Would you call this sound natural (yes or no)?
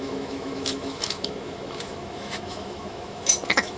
no